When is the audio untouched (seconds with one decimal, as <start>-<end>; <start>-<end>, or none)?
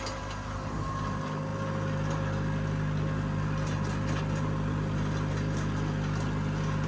0.0-6.9